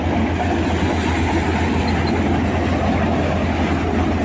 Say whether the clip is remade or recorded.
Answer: recorded